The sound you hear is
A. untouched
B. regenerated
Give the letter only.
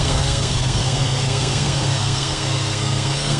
B